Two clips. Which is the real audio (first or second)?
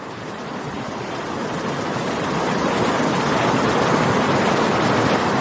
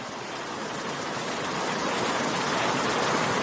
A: second